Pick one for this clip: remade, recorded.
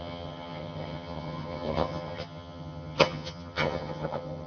remade